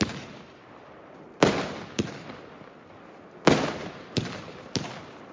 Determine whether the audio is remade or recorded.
recorded